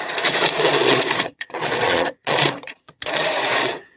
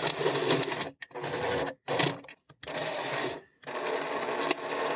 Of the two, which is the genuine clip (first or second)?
second